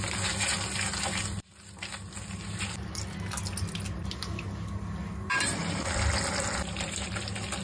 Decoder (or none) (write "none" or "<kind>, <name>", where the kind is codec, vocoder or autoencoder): none